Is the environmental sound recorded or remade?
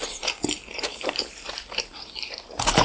remade